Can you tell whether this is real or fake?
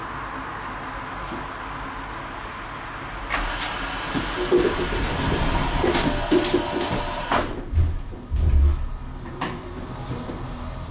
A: real